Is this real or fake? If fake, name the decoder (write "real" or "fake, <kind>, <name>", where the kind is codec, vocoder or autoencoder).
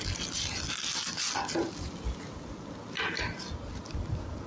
real